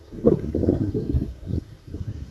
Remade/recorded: remade